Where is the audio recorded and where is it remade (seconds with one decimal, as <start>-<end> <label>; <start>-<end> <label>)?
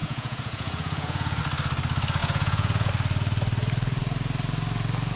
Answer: 0.0-1.4 remade; 1.4-2.2 recorded; 2.2-2.9 remade; 2.9-5.2 recorded